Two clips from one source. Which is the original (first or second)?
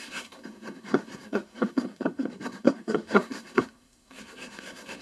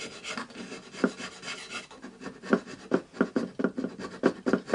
second